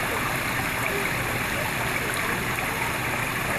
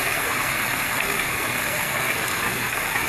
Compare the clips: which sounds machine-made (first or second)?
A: second